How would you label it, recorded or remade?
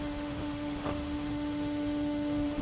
remade